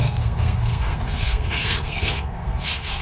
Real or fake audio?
fake